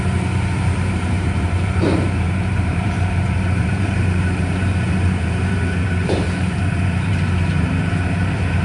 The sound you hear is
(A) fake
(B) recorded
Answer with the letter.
A